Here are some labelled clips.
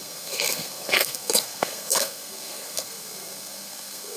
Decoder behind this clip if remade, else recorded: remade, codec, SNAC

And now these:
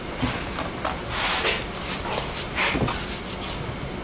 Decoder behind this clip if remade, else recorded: recorded